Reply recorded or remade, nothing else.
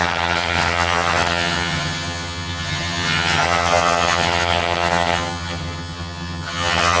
remade